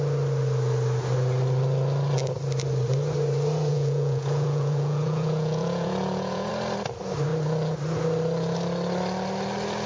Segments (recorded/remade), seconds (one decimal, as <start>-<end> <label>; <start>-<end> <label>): 0.0-3.7 recorded; 3.7-6.5 remade; 6.5-9.9 recorded